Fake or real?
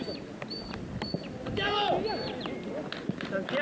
real